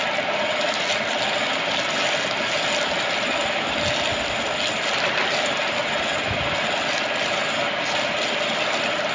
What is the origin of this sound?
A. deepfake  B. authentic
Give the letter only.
B